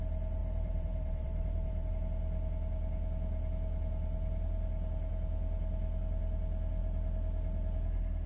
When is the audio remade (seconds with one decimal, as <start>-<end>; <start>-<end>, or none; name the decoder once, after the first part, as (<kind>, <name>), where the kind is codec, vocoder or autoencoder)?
0.4-1.9 (vocoder, BigVGAN v2)